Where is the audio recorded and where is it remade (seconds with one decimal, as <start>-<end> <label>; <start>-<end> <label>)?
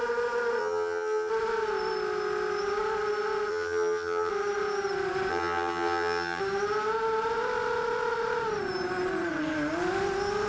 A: 0.0-0.6 recorded; 0.6-1.3 remade; 1.3-3.5 recorded; 3.5-4.3 remade; 4.3-5.3 recorded; 5.3-6.4 remade; 6.4-10.5 recorded